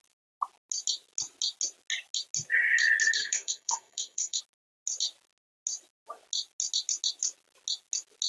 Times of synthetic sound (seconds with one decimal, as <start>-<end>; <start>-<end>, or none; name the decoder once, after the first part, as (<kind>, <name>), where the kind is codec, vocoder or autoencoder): 3.2-4.4 (codec, SNAC)

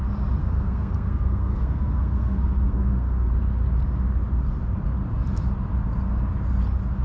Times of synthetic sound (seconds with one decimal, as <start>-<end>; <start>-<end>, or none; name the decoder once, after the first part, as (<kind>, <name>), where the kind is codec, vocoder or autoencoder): 0.4-3.3 (codec, SNAC)

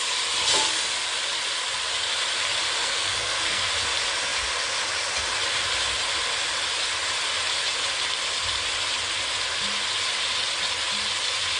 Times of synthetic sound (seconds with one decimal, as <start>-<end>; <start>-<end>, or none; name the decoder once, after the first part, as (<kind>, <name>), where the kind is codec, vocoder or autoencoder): 2.8-3.7 (codec, SNAC)

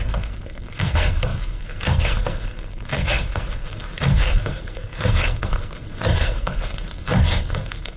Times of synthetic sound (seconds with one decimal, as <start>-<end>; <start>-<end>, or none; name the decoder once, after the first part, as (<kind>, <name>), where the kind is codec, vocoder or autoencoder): 0.0-8.0 (codec, SNAC)

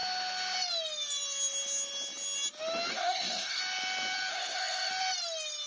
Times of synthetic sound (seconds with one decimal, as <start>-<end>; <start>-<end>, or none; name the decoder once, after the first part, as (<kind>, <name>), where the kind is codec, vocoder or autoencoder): 2.9-3.6 (codec, SNAC); 4.3-4.9

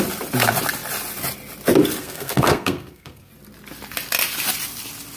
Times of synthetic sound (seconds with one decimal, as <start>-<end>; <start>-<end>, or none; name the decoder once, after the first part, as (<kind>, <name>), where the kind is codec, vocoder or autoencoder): 2.0-3.3 (codec, SNAC)